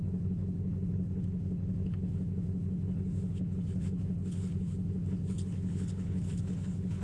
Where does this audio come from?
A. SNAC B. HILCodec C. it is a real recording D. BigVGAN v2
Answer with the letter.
B